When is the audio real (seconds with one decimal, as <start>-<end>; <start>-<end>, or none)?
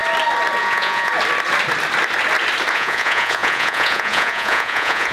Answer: 0.0-0.6; 1.1-2.7